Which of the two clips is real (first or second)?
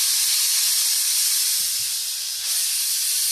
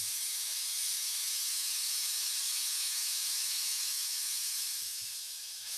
first